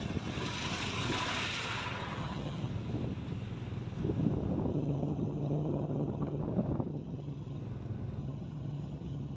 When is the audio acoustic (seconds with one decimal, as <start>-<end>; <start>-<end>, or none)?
0.0-2.2; 2.7-4.7; 6.4-6.9; 7.6-8.2